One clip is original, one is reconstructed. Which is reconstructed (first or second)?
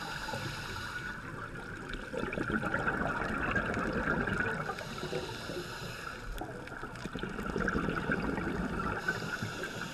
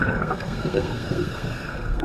second